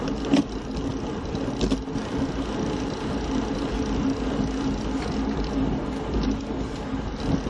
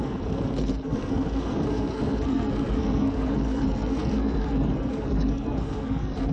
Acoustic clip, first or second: first